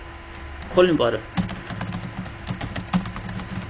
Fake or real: real